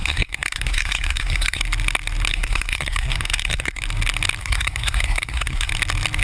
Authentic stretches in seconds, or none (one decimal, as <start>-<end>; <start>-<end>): 1.6-2.3; 3.8-4.4; 5.7-6.2